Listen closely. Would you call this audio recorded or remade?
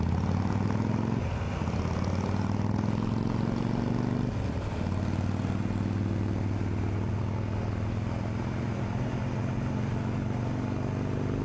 recorded